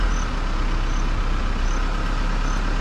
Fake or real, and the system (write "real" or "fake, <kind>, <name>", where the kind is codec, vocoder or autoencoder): real